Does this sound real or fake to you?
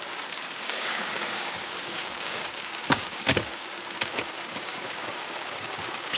fake